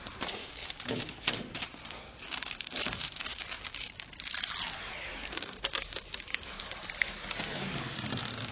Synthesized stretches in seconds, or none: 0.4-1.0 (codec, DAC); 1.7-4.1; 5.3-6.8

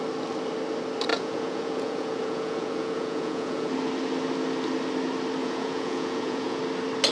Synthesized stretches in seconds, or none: 1.1-3.7 (vocoder, Vocos); 5.4-6.6

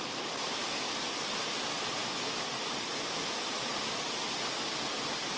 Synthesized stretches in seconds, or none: none